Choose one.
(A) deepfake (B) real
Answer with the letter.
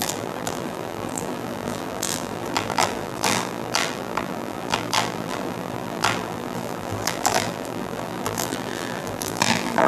A